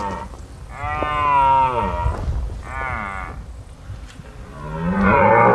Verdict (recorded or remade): recorded